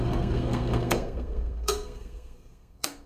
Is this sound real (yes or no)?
no